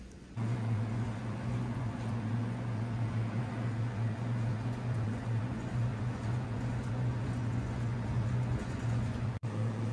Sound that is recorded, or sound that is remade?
remade